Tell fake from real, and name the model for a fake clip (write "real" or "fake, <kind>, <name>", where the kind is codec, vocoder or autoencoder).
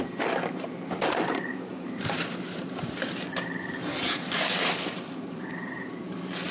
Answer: fake, vocoder, BigVGAN v2